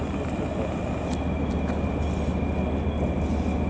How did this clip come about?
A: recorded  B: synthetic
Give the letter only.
A